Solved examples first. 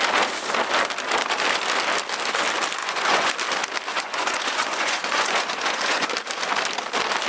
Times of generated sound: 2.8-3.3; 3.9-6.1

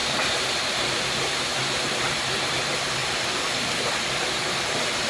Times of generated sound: 0.0-0.9; 1.5-2.6; 3.0-4.1